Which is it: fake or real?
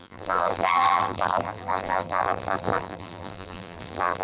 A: fake